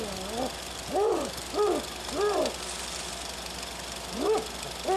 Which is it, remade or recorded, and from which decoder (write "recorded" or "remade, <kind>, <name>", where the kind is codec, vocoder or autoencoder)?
recorded